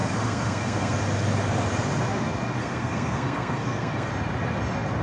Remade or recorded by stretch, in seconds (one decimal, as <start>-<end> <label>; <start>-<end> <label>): 0.0-1.0 remade; 1.0-2.6 recorded; 2.6-4.1 remade; 4.1-5.0 recorded